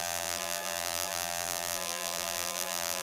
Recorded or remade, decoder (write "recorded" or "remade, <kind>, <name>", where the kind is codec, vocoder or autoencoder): remade, vocoder, BigVGAN v2